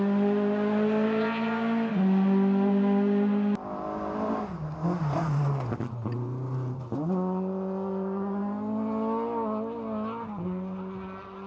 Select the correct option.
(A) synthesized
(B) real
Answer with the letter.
B